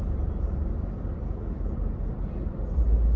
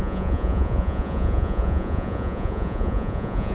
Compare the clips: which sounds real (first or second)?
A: first